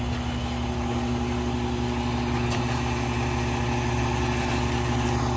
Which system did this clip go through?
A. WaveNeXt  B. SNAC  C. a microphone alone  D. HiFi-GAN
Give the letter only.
C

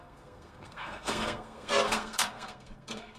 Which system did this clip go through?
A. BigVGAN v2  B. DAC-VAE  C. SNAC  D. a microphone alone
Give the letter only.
C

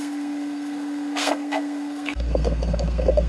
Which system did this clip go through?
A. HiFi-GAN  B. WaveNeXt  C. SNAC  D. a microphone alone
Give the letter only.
C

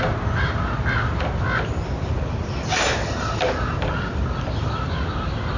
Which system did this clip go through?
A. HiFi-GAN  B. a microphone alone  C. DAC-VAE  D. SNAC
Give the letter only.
B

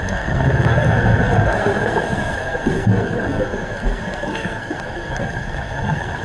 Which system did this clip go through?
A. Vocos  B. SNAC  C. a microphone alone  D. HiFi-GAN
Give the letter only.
B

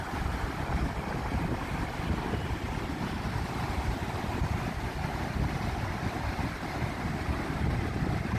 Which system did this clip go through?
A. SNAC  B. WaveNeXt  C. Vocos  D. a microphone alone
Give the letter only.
D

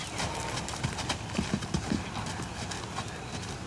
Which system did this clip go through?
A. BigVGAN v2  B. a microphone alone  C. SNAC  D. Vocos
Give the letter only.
B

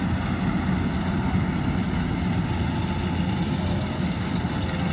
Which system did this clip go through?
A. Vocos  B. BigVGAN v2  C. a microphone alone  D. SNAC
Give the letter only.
C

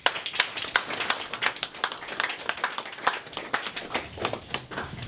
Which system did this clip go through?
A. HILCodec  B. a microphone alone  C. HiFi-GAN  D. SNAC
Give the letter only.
B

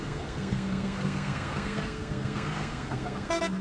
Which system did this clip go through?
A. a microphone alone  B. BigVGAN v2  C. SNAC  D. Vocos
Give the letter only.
C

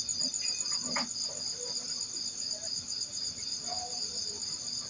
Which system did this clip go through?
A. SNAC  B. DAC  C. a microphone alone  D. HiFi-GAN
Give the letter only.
C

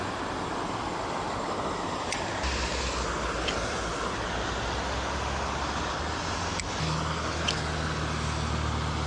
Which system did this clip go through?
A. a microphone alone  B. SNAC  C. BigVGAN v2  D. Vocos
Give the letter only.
A